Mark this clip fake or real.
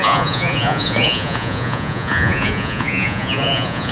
fake